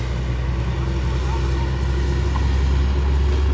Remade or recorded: recorded